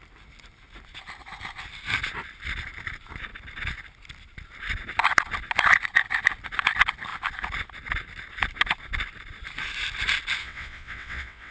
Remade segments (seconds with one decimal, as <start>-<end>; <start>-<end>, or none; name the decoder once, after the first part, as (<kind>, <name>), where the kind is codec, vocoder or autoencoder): 10.4-11.5 (vocoder, WaveNeXt)